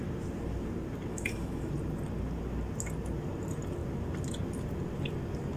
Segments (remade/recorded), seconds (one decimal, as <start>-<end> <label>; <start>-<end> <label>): 0.0-1.1 recorded; 1.1-1.7 remade; 1.7-5.6 recorded